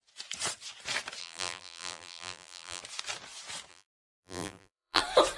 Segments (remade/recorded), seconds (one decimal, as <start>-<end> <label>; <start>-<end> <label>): 0.0-1.2 recorded; 1.2-2.8 remade; 2.8-3.7 recorded; 3.7-5.0 remade; 5.0-5.4 recorded